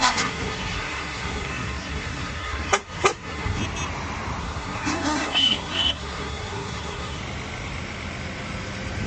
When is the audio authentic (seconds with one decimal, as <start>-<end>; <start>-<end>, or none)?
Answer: 3.6-4.4; 7.2-9.1